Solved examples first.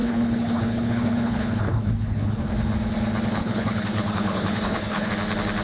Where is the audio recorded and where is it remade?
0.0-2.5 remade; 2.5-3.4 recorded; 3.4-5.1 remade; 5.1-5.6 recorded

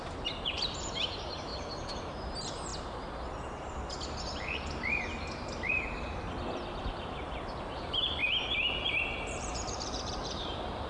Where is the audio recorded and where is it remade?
0.0-1.5 remade; 1.5-2.0 recorded; 2.0-2.7 remade; 2.7-6.8 recorded; 6.8-8.2 remade; 8.2-9.2 recorded; 9.2-10.9 remade

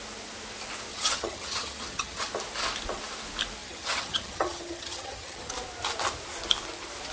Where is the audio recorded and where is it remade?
0.0-0.9 recorded; 0.9-2.3 remade; 2.3-3.6 recorded; 3.6-5.5 remade; 5.5-7.1 recorded

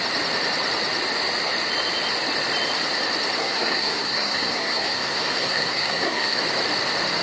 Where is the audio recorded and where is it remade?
0.0-3.4 recorded; 3.4-6.4 remade; 6.4-7.2 recorded

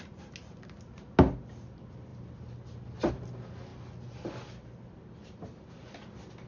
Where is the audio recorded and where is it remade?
0.0-6.5 recorded

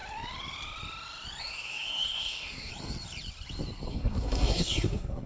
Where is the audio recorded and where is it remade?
0.0-1.4 recorded; 1.4-2.7 remade; 2.7-3.9 recorded; 3.9-5.3 remade

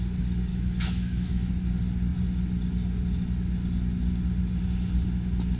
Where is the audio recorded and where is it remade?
0.0-0.5 recorded; 0.5-1.5 remade; 1.5-5.6 recorded